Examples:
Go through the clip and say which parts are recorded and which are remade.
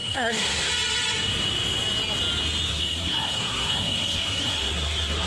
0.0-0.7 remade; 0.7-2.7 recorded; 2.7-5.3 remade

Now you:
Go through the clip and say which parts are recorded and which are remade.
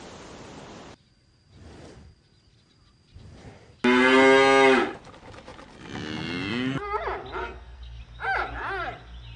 0.0-7.4 recorded; 7.4-8.0 remade; 8.0-9.4 recorded